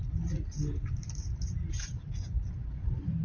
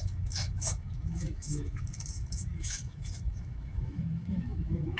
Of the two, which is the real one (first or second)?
first